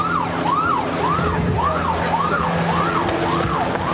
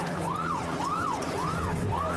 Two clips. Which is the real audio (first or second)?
first